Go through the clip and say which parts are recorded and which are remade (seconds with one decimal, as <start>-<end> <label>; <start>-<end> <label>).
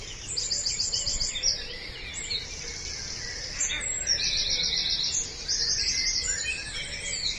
0.0-0.6 recorded; 0.6-2.1 remade; 2.1-7.4 recorded